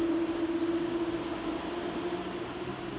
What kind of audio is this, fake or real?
real